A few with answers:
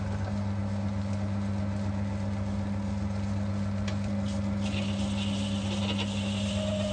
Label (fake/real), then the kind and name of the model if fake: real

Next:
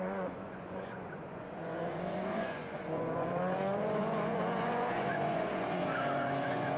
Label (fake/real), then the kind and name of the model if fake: fake, vocoder, Vocos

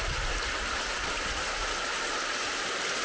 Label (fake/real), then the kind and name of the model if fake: real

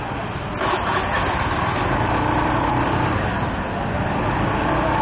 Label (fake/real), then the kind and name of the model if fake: real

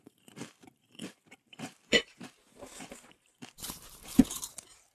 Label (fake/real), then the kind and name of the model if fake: fake, vocoder, BigVGAN v2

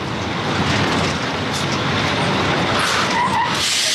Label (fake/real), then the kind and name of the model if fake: real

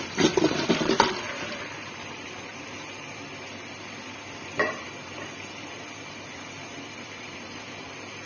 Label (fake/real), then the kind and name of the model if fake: fake, vocoder, BigVGAN v2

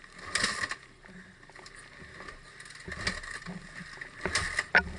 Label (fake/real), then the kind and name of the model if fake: real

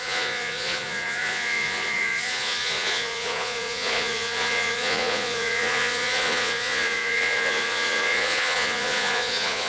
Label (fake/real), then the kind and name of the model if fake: fake, vocoder, Vocos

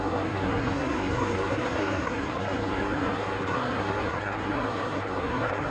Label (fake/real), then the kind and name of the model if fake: fake, codec, SNAC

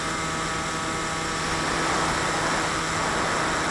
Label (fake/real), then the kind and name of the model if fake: real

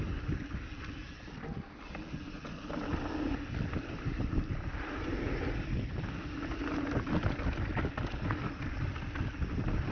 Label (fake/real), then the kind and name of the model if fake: real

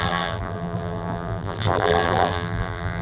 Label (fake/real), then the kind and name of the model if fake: fake, vocoder, BigVGAN v2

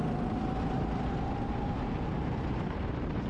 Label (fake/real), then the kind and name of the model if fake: real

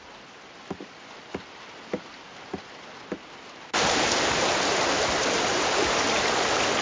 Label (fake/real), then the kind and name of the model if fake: fake, vocoder, BigVGAN v2